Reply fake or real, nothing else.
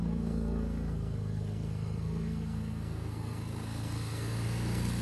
fake